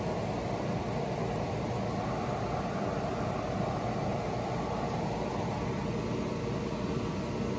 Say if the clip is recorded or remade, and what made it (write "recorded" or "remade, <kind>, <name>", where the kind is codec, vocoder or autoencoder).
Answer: recorded